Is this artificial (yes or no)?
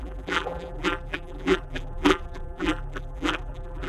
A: yes